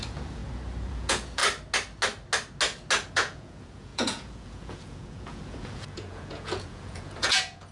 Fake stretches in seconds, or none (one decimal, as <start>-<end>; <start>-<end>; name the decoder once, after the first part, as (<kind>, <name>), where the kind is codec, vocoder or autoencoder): 0.0-0.4 (vocoder, Vocos); 0.9-1.4; 3.1-7.7